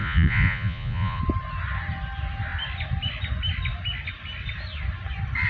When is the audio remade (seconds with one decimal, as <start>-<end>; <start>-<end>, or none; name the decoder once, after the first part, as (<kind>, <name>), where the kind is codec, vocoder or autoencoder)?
0.0-1.2 (vocoder, Vocos)